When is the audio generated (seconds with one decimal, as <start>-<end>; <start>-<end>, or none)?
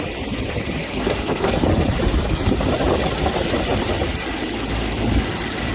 0.8-1.5